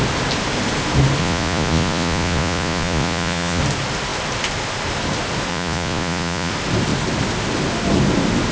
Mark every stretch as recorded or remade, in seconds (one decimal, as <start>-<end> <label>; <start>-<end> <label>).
0.0-1.2 recorded; 1.2-3.6 remade; 3.6-5.5 recorded; 5.5-6.5 remade; 6.5-8.5 recorded